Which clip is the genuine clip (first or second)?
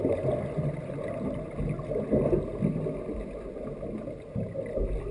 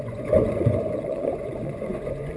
first